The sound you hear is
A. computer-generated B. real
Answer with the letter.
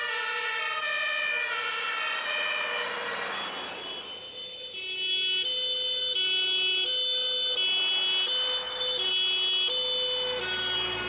B